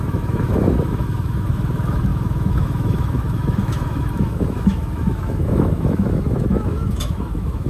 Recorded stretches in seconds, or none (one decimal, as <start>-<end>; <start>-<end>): none